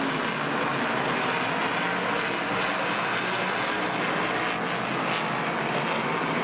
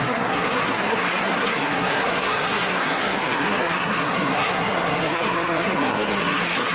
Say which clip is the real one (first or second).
first